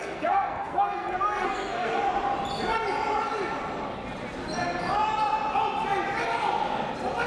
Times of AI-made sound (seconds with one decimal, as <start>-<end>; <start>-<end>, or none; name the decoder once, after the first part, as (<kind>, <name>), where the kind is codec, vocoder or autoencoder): 0.0-2.0 (codec, SNAC)